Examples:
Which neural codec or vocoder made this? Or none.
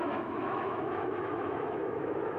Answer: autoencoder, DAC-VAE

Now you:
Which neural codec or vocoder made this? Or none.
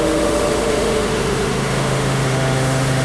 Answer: autoencoder, DAC-VAE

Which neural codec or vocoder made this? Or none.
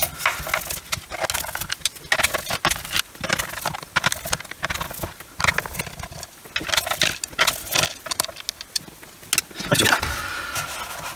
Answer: none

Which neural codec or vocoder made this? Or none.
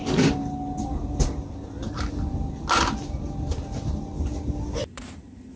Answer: none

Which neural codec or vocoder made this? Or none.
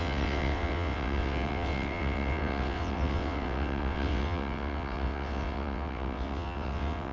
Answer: vocoder, WaveNeXt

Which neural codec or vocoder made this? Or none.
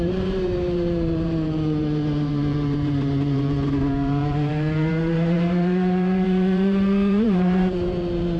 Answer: vocoder, BigVGAN v2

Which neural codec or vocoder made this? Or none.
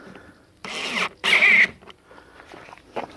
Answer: vocoder, BigVGAN v2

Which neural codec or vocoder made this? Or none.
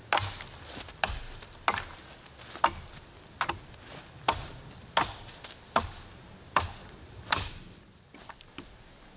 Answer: none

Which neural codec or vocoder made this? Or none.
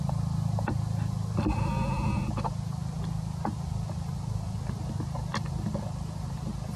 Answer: none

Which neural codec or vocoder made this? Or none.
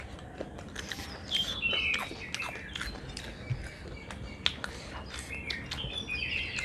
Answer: none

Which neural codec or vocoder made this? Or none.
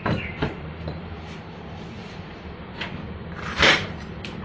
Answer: vocoder, BigVGAN v2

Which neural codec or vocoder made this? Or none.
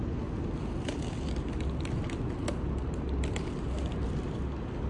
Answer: none